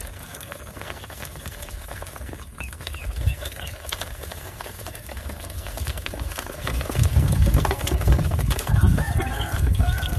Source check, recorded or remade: remade